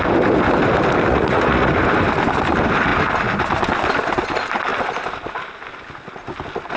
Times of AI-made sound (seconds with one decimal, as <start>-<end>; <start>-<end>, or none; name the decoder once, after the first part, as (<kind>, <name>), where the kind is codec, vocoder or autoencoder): 1.1-1.7 (vocoder, Vocos)